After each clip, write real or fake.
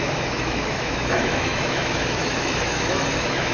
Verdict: fake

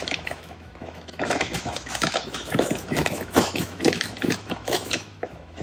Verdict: fake